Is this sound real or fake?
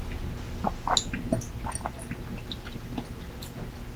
real